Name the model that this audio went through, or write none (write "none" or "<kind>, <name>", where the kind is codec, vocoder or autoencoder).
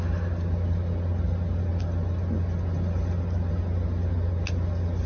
none